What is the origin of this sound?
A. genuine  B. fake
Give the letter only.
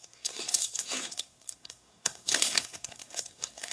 B